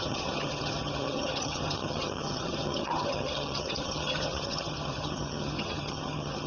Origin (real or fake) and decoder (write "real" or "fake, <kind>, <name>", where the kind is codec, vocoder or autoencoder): fake, vocoder, HiFi-GAN